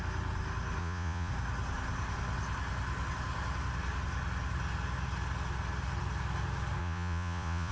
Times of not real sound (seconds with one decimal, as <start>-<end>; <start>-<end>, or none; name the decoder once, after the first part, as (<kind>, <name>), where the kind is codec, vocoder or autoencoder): 0.8-1.3 (vocoder, Vocos); 6.8-7.7